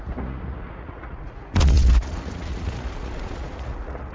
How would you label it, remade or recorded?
remade